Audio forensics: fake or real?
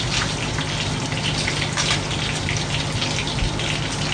real